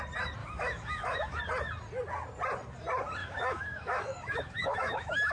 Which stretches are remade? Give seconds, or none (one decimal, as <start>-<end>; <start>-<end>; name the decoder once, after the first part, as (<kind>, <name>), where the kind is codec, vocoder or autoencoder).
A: 0.4-1.4 (autoencoder, DAC-VAE); 3.2-5.3